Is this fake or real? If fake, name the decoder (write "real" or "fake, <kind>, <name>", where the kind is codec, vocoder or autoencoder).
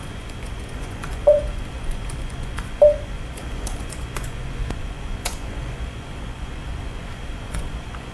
fake, vocoder, Vocos